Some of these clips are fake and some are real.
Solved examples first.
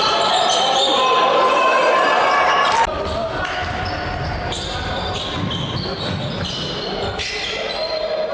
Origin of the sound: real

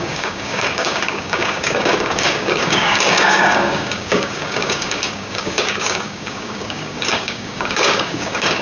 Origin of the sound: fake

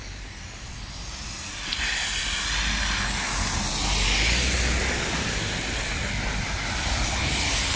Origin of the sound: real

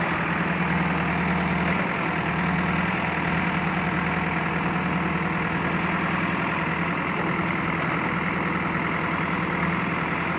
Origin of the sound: real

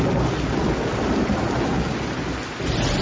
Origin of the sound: real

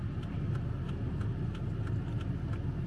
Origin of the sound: real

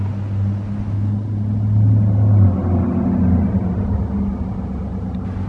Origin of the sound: real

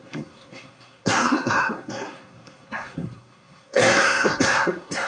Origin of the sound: fake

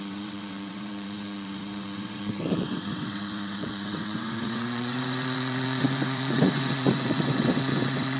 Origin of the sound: fake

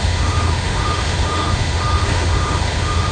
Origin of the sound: fake